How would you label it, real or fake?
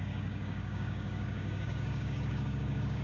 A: fake